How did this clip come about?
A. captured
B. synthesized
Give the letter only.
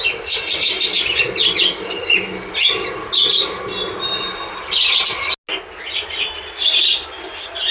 A